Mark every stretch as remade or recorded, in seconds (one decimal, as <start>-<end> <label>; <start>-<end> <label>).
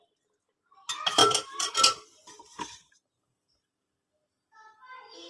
0.0-1.2 recorded; 1.2-1.7 remade; 1.7-2.5 recorded; 2.5-3.8 remade; 3.8-5.3 recorded